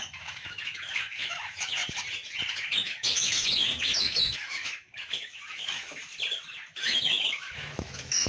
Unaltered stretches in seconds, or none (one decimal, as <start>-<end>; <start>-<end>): 1.8-2.5; 6.0-6.7